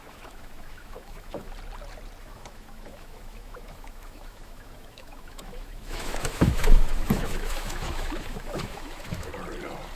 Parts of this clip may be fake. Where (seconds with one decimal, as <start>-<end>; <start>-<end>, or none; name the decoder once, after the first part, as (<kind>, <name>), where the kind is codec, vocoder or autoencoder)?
0.0-1.5 (autoencoder, DAC-VAE); 2.2-9.3